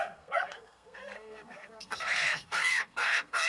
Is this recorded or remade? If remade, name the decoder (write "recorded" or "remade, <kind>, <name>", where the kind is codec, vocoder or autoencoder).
remade, codec, SNAC